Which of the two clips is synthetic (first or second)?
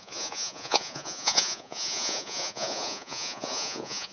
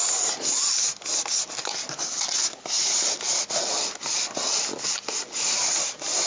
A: first